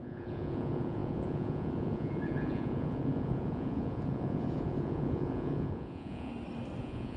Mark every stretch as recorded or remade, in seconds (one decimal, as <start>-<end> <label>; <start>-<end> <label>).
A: 0.0-6.3 remade; 6.3-6.8 recorded; 6.8-7.2 remade